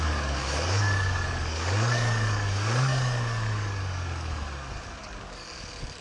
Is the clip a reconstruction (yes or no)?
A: yes